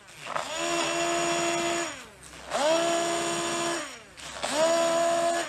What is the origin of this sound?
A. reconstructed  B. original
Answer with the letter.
B